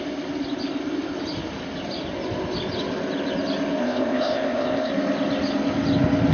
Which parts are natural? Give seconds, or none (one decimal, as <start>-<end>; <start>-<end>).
0.0-3.8; 4.9-6.3